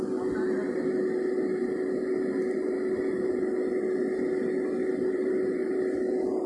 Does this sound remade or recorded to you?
recorded